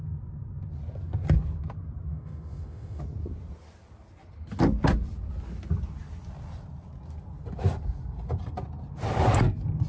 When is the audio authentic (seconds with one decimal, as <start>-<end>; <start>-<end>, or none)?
0.0-2.1; 3.0-9.9